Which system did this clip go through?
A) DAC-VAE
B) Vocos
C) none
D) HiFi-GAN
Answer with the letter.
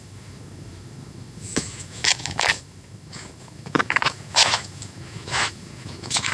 A